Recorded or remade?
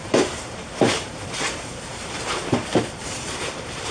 remade